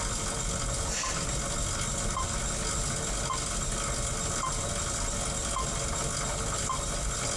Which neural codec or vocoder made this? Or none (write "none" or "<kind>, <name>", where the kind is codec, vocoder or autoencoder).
none